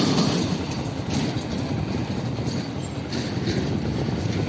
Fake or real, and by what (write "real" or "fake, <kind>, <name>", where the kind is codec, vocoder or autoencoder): fake, vocoder, BigVGAN v2